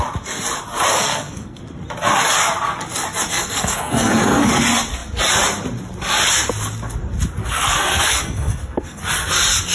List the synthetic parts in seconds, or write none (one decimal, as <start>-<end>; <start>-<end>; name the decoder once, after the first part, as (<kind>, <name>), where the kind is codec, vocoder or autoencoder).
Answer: 0.9-1.6 (codec, SNAC); 3.3-4.5; 7.4-9.0